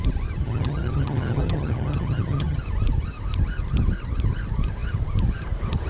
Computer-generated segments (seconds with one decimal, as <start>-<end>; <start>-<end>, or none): 0.4-2.6